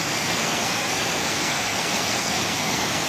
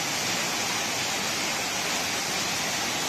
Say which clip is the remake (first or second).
first